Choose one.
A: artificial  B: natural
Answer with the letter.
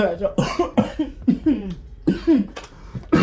A